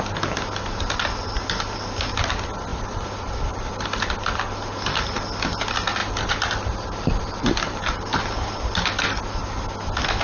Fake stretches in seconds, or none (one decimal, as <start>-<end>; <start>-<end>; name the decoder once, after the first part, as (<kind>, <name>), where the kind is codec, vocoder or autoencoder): 2.7-3.7 (vocoder, BigVGAN v2); 6.0-8.2